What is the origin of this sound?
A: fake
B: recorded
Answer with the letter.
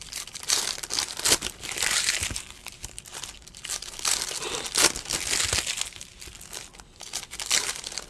B